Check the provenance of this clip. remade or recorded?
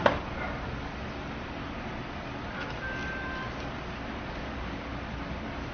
recorded